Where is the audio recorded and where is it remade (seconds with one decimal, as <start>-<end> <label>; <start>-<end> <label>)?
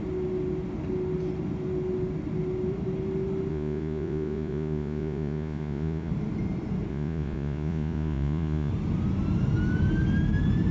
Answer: 0.0-3.5 recorded; 3.5-6.1 remade; 6.1-6.9 recorded; 6.9-8.7 remade; 8.7-10.7 recorded